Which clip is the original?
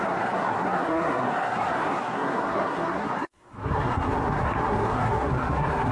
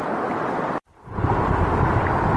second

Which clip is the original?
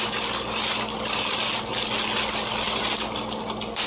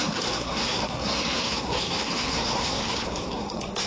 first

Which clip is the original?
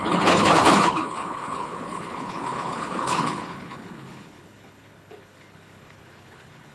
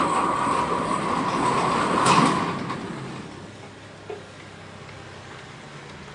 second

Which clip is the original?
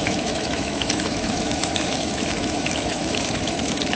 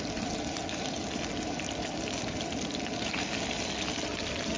second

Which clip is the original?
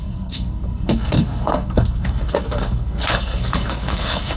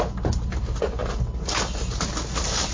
second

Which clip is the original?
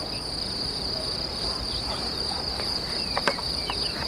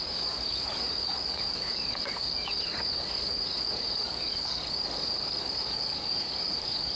first